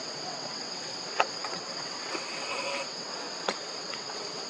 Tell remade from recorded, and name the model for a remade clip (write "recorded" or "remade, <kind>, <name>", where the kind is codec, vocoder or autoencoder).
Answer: remade, vocoder, WaveNeXt